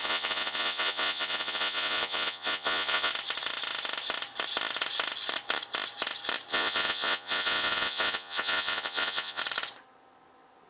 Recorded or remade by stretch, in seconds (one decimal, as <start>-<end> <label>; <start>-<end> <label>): 0.0-3.1 remade; 3.1-6.5 recorded; 6.5-9.4 remade; 9.4-10.7 recorded